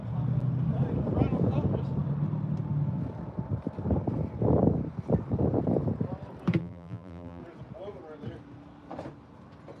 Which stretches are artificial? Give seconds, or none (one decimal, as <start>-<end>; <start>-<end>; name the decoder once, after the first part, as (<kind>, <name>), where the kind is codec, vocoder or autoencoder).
6.6-7.4 (vocoder, BigVGAN v2)